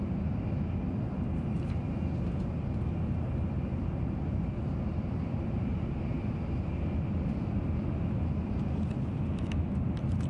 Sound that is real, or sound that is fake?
real